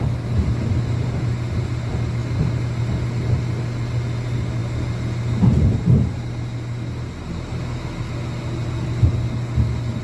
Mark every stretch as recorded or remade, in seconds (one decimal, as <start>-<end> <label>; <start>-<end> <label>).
0.0-10.0 recorded